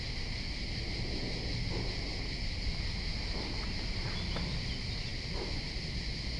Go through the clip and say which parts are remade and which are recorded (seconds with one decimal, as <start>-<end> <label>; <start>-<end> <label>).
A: 0.0-6.4 recorded